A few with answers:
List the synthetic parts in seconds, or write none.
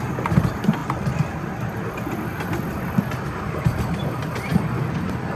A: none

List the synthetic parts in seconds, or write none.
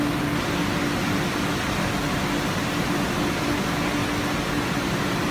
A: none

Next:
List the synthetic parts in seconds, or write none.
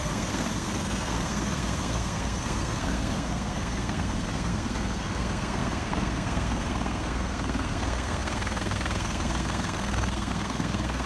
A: 0.0-11.1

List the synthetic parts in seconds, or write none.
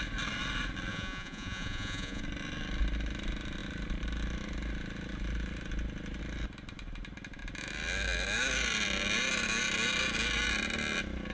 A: 0.9-2.2